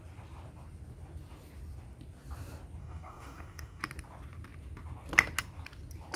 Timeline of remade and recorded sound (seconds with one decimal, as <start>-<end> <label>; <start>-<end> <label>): 0.0-2.8 recorded; 2.8-3.8 remade; 3.8-6.2 recorded